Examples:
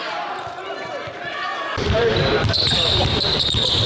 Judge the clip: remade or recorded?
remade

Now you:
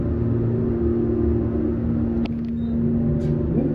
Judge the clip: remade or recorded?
recorded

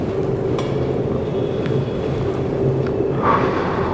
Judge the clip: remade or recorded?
remade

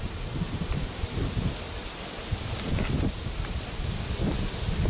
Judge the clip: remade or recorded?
remade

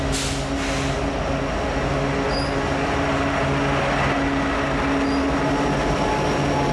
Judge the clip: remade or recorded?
recorded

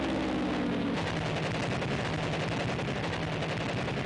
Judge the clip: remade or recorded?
recorded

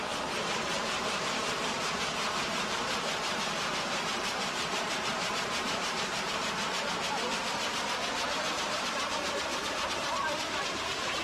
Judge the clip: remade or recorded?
remade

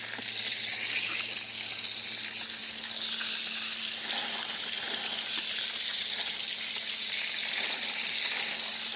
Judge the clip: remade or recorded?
recorded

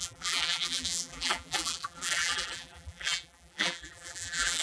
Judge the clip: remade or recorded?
remade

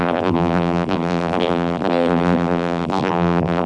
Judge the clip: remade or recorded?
remade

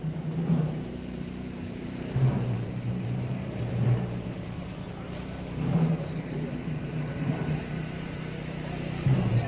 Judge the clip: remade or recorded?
remade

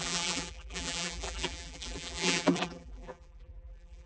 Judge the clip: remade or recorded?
remade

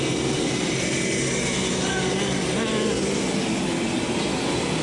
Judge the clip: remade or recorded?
recorded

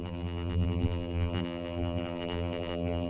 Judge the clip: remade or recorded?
remade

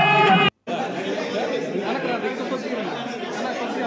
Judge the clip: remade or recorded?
recorded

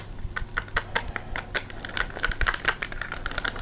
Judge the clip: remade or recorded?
remade